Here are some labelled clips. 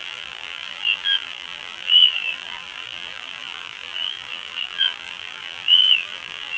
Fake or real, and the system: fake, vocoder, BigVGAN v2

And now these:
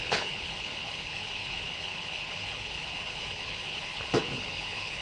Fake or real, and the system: fake, codec, HILCodec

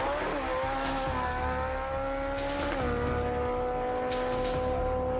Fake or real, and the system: real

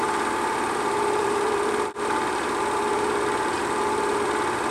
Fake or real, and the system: fake, vocoder, BigVGAN v2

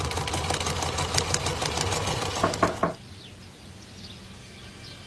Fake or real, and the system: real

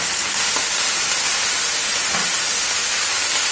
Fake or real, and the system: real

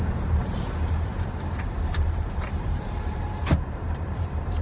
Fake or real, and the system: fake, vocoder, BigVGAN v2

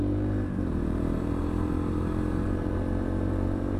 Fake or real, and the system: fake, vocoder, BigVGAN v2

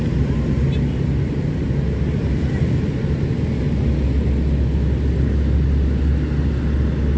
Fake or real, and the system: real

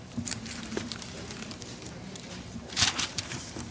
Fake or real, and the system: fake, vocoder, BigVGAN v2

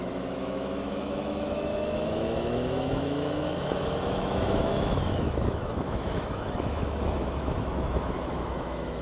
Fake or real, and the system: fake, autoencoder, DAC-VAE